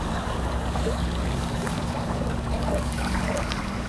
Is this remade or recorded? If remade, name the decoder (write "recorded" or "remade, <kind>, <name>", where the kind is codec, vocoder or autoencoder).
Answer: remade, codec, DAC